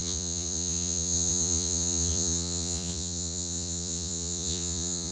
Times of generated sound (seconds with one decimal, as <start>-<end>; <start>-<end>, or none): 0.0-5.1